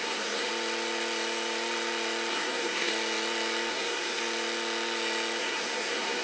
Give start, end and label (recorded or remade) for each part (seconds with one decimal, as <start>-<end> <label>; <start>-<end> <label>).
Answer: 0.0-0.5 remade; 0.5-2.3 recorded; 2.3-2.9 remade; 2.9-3.7 recorded; 3.7-4.2 remade; 4.2-5.4 recorded; 5.4-6.2 remade